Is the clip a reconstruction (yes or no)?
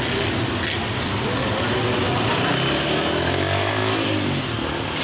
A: no